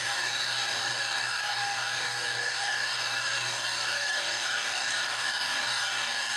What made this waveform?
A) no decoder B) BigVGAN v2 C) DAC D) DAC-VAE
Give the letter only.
C